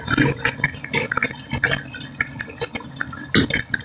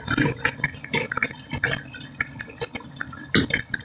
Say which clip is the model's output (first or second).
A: second